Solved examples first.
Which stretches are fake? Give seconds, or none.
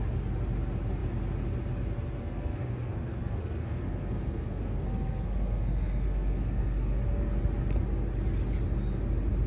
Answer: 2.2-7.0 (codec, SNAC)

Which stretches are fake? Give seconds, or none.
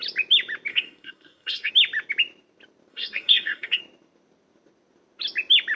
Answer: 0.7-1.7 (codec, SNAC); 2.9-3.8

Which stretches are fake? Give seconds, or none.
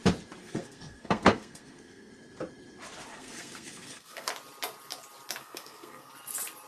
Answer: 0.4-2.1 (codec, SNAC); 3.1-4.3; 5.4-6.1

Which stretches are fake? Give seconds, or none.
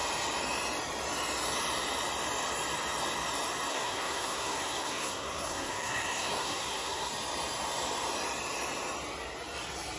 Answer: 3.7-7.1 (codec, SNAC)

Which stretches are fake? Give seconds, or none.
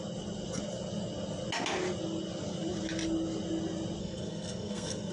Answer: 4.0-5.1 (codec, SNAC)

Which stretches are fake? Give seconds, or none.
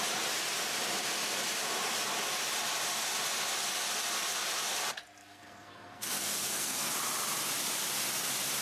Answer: 5.2-6.9 (codec, SNAC)